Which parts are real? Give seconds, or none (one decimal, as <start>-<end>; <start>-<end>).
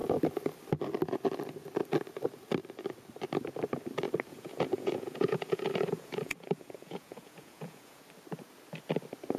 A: 0.0-4.3; 8.0-9.4